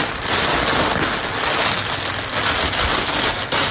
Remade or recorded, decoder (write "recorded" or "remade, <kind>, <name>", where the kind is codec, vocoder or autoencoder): recorded